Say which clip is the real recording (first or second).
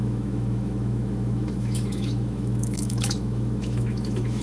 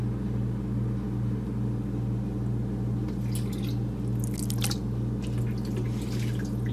second